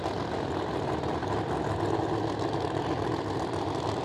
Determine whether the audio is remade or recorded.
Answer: recorded